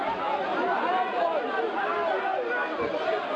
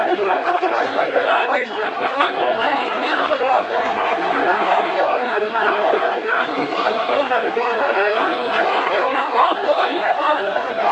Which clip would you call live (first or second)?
first